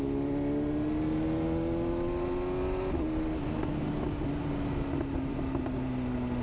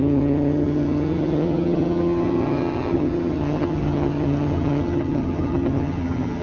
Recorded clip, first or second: first